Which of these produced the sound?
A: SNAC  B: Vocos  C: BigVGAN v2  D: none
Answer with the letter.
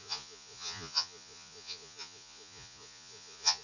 B